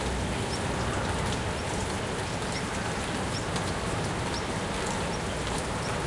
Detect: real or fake real